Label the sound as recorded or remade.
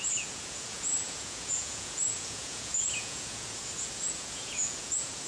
remade